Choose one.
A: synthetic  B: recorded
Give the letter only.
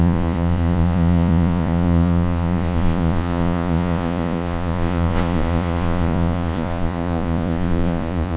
A